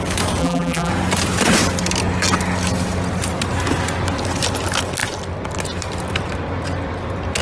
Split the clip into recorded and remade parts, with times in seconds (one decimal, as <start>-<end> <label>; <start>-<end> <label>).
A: 0.0-0.4 recorded; 0.4-0.9 remade; 0.9-7.4 recorded